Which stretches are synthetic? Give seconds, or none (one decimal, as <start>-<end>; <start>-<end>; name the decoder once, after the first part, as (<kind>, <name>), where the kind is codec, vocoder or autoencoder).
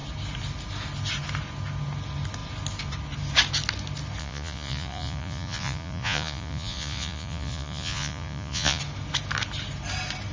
4.2-8.8 (vocoder, Vocos)